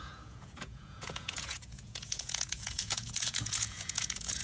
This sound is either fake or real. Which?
fake